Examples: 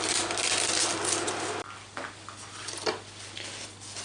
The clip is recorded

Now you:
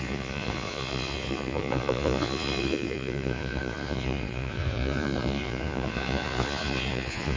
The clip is remade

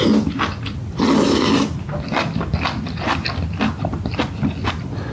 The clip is recorded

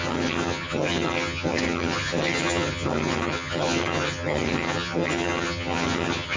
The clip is remade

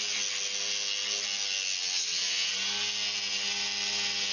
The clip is recorded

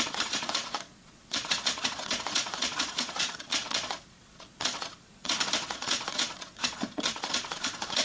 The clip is remade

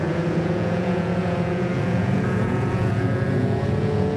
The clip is remade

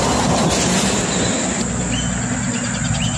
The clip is recorded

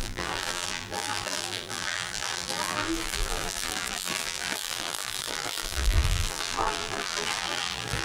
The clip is remade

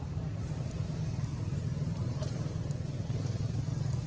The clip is recorded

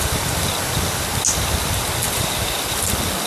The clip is recorded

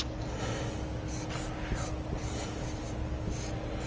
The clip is recorded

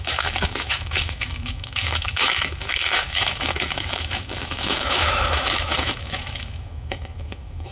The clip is remade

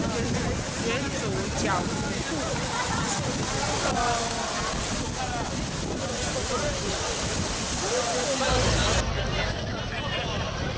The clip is recorded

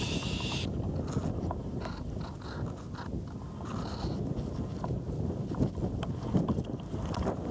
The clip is recorded